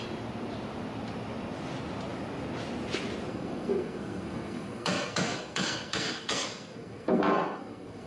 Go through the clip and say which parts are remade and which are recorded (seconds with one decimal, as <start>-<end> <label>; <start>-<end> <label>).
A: 0.0-3.3 recorded; 3.3-8.1 remade